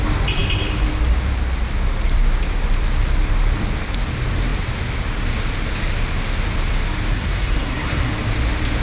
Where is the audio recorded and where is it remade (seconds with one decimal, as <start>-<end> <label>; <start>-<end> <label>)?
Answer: 0.0-7.1 recorded; 7.1-8.1 remade; 8.1-8.8 recorded